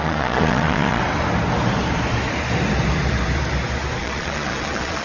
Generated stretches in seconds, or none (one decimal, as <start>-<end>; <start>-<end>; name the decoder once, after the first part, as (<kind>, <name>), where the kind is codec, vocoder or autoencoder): 0.0-1.0 (vocoder, Vocos); 4.0-5.0